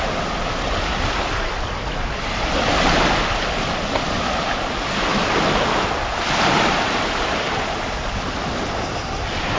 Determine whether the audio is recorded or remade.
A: recorded